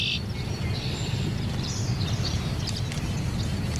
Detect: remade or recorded recorded